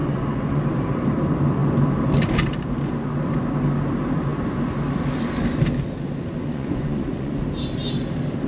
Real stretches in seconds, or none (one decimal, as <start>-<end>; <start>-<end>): 0.6-6.4; 7.4-8.5